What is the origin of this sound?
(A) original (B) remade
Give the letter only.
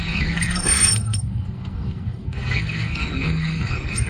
B